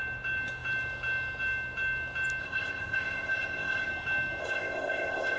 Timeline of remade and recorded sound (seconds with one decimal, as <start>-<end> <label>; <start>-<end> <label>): 0.0-2.4 recorded; 2.4-3.9 remade; 3.9-4.4 recorded; 4.4-5.4 remade